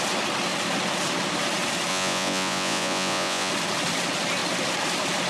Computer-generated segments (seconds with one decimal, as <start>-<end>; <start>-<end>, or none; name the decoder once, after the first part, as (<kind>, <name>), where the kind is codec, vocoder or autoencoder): 1.9-3.5 (vocoder, Vocos)